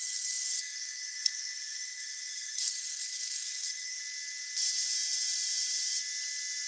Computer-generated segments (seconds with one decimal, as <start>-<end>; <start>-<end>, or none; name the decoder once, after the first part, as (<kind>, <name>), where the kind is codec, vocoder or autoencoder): 0.0-4.0 (codec, SNAC)